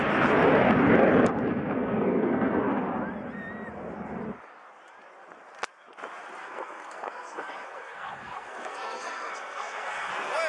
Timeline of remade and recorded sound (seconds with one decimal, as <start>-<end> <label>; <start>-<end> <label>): 0.0-1.5 recorded; 1.5-2.6 remade; 2.6-6.4 recorded; 6.4-10.1 remade; 10.1-10.5 recorded